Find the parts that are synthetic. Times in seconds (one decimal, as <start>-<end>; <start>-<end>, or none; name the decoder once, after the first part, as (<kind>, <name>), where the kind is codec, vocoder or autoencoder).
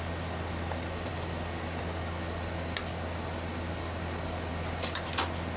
none